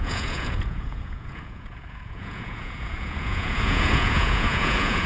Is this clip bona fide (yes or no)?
no